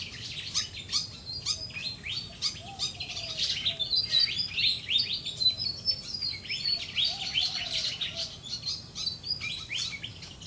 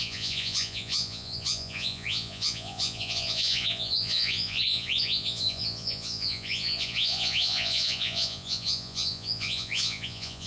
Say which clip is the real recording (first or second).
first